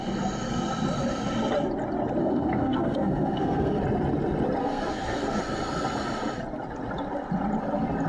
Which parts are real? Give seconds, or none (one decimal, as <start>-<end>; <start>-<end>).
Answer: 0.0-2.2; 3.8-4.6; 5.4-8.1